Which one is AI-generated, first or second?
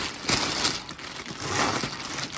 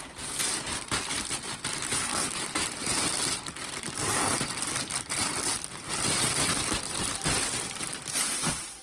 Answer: second